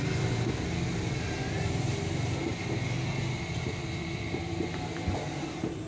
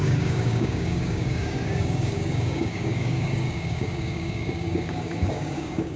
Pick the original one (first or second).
first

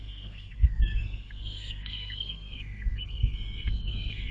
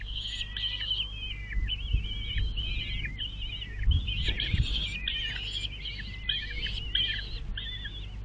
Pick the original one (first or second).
second